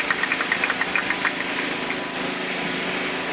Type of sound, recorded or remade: recorded